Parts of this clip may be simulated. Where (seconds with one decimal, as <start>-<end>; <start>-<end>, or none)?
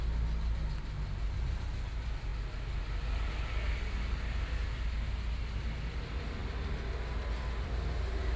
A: none